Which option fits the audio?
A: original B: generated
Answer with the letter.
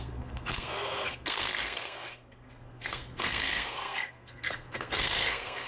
B